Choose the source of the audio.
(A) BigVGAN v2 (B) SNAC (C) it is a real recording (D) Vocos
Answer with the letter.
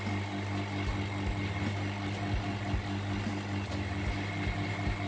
C